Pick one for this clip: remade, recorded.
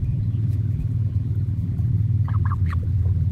remade